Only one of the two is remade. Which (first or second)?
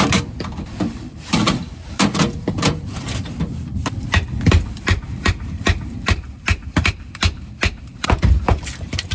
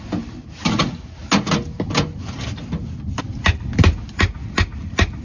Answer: first